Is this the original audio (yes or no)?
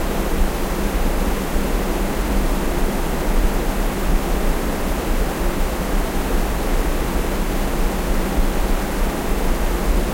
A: yes